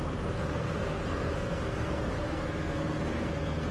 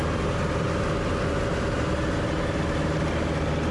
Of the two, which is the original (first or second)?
second